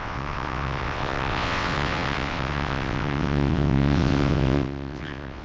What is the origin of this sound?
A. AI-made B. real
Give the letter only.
A